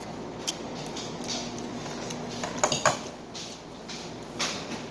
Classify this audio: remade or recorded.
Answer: recorded